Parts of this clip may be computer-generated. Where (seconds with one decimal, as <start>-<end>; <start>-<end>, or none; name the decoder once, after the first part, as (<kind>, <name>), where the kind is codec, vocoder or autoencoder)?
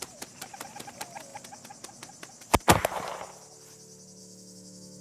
4.2-5.0 (autoencoder, DAC-VAE)